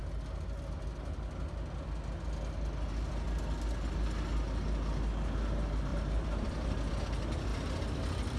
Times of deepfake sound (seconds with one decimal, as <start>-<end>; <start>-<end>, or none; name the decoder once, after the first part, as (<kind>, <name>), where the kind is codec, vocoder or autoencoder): 5.9-6.9 (vocoder, BigVGAN v2)